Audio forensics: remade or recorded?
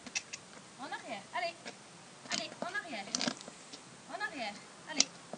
recorded